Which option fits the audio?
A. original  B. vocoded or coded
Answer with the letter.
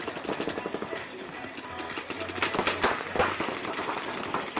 A